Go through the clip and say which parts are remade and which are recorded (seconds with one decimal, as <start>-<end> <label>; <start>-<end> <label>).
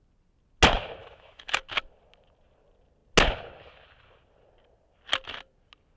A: 0.0-1.0 recorded; 1.0-1.6 remade; 1.6-6.0 recorded